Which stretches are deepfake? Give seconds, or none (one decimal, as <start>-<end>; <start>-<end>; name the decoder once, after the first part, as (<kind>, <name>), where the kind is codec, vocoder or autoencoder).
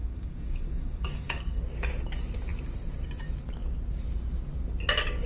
0.0-1.6 (codec, DAC)